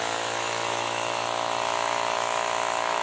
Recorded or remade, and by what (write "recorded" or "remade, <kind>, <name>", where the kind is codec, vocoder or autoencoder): remade, autoencoder, DAC-VAE